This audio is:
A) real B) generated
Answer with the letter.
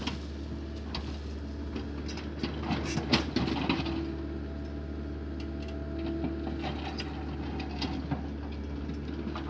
A